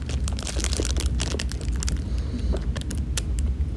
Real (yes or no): yes